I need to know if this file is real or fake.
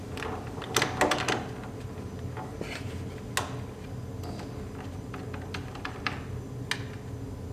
real